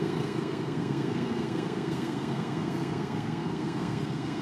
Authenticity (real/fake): fake